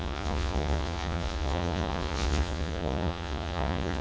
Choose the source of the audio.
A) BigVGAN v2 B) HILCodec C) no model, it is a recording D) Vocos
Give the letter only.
D